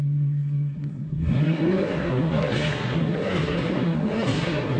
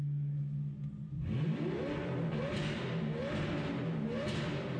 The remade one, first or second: first